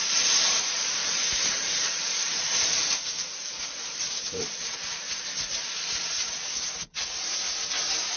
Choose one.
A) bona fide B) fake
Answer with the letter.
B